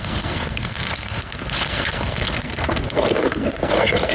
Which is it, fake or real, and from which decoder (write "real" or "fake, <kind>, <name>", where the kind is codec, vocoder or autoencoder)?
fake, codec, SNAC